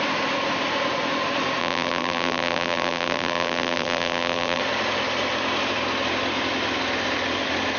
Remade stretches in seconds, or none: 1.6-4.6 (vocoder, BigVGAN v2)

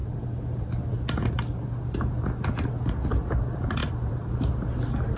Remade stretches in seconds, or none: none

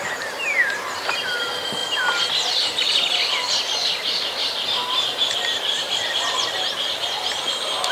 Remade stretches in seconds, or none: none

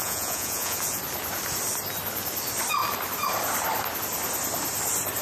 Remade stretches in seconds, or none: 0.0-1.0 (vocoder, Vocos)

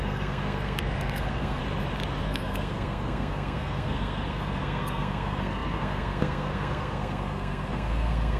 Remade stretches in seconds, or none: 0.0-1.6 (codec, SNAC); 2.2-8.4

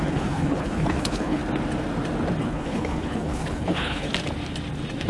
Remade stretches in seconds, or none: 0.0-1.4 (codec, HILCodec); 2.4-4.1